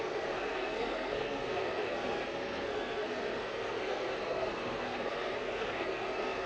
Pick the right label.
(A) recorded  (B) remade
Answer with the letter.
B